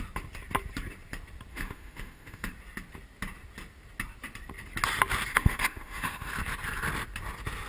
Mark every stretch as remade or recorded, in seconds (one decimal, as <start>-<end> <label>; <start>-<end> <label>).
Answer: 0.0-1.5 recorded; 1.5-2.5 remade; 2.5-5.3 recorded; 5.3-6.3 remade; 6.3-7.7 recorded